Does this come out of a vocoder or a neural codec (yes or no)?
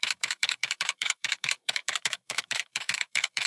yes